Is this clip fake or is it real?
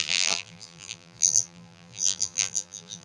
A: fake